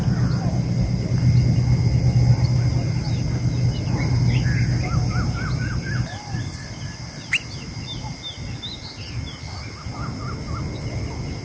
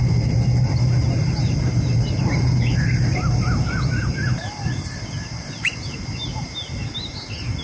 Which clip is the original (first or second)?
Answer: first